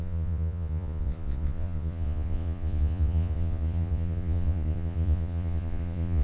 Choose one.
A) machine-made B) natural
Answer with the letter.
A